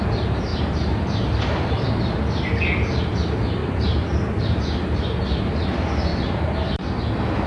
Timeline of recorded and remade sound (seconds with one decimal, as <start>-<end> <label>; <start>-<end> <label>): 0.0-0.5 recorded; 0.5-2.0 remade; 2.0-3.6 recorded; 3.6-5.2 remade; 5.2-6.1 recorded; 6.1-6.9 remade; 6.9-7.5 recorded